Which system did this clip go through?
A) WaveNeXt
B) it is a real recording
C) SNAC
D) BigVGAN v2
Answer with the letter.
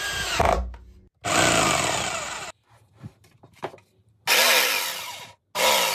B